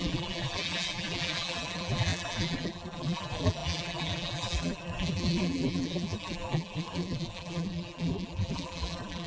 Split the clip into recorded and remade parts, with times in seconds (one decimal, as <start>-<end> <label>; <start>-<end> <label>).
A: 0.0-9.3 remade